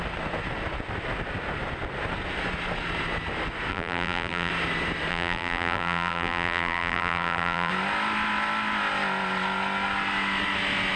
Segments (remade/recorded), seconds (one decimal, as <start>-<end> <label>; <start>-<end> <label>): 0.0-3.7 recorded; 3.7-4.5 remade; 4.5-5.1 recorded; 5.1-7.7 remade; 7.7-11.0 recorded